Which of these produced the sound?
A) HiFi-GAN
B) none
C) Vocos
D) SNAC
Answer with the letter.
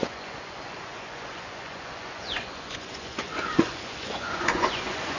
C